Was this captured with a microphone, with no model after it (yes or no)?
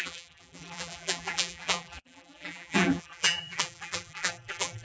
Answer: no